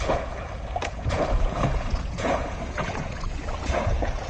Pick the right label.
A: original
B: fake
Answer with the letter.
B